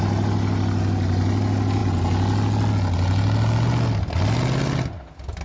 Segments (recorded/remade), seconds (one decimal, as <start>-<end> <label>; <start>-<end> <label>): 0.0-5.4 recorded